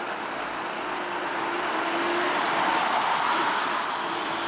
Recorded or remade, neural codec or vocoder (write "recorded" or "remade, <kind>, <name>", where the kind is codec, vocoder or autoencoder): recorded